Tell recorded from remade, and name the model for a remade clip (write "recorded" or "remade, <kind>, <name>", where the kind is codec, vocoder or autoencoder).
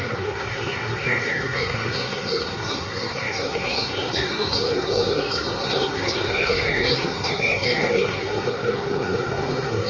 remade, codec, SNAC